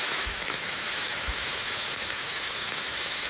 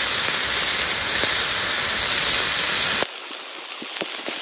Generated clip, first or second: first